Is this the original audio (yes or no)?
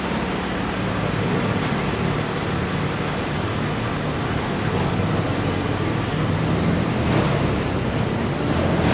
yes